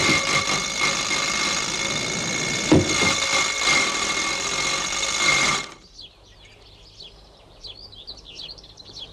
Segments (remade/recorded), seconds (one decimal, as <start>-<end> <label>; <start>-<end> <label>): 0.0-9.1 recorded